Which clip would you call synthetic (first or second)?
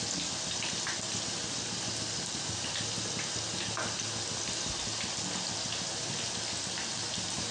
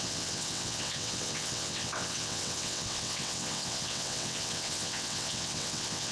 second